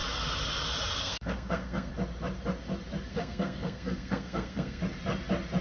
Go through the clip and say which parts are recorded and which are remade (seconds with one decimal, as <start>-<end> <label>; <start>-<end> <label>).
0.0-1.0 recorded; 1.0-1.9 remade; 1.9-3.1 recorded; 3.1-4.8 remade; 4.8-5.6 recorded